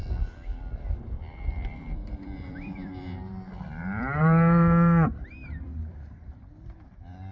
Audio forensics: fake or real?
fake